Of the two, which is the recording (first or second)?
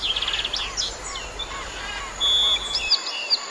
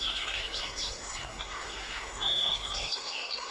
first